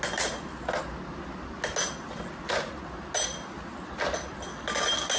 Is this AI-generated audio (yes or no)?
no